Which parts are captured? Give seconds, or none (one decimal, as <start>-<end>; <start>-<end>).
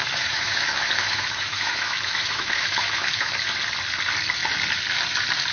3.3-5.5